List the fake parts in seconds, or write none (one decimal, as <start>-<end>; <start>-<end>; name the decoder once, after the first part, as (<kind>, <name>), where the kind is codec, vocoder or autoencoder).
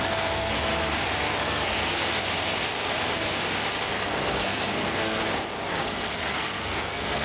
0.0-0.7 (codec, SNAC); 1.4-2.2; 3.9-5.2; 5.7-7.2